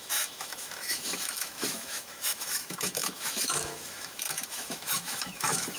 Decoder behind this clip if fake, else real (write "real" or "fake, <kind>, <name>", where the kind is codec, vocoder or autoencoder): fake, autoencoder, DAC-VAE